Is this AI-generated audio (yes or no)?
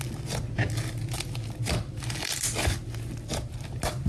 no